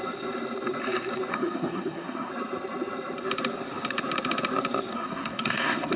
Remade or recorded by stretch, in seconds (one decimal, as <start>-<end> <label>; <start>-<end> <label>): 0.0-1.3 recorded; 1.3-2.3 remade; 2.3-4.9 recorded; 4.9-6.0 remade